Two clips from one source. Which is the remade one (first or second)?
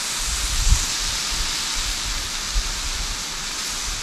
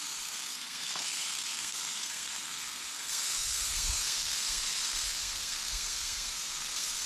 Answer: second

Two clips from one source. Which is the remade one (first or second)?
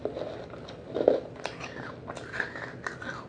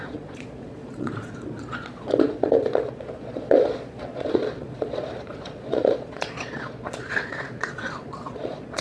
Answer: second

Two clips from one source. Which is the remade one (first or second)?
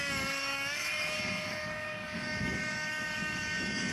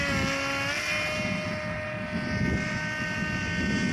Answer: first